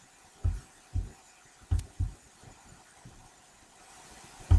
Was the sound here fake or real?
real